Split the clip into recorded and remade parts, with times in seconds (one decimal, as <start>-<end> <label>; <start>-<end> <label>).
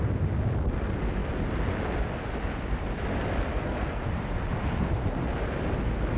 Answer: 0.0-3.5 recorded; 3.5-4.0 remade; 4.0-6.2 recorded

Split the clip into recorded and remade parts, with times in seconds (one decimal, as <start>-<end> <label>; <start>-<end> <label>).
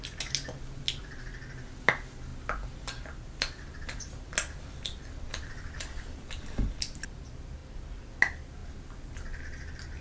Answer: 0.0-10.0 recorded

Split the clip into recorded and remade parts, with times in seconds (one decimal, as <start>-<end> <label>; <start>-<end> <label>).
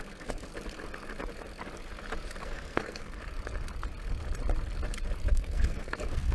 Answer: 0.0-0.5 remade; 0.5-2.4 recorded; 2.4-3.2 remade; 3.2-5.3 recorded; 5.3-6.3 remade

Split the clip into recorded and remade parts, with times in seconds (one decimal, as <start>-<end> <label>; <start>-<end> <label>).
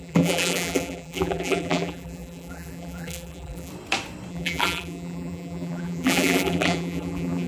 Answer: 0.0-3.7 remade; 3.7-4.3 recorded; 4.3-7.5 remade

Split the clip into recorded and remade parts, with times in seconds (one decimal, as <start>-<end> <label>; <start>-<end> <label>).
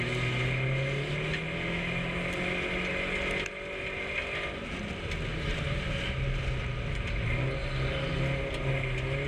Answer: 0.0-5.3 recorded; 5.3-5.9 remade; 5.9-9.3 recorded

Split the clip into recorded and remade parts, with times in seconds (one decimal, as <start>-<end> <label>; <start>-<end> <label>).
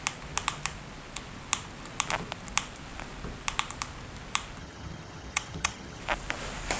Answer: 0.0-4.6 recorded; 4.6-6.0 remade; 6.0-6.8 recorded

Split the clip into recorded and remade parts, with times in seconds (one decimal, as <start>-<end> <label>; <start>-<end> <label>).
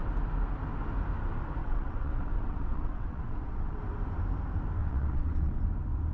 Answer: 0.0-1.6 recorded; 1.6-3.8 remade; 3.8-4.8 recorded; 4.8-5.6 remade; 5.6-6.1 recorded